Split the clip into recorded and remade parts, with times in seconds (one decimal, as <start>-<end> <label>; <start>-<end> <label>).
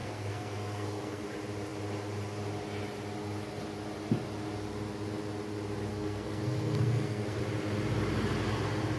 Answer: 0.0-1.2 remade; 1.2-5.9 recorded; 5.9-7.4 remade; 7.4-9.0 recorded